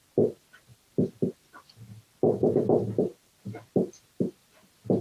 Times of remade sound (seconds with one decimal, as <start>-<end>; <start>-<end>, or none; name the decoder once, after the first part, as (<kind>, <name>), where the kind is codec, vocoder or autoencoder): 0.7-3.7 (vocoder, BigVGAN v2)